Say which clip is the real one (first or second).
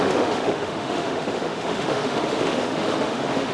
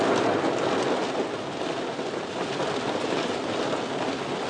second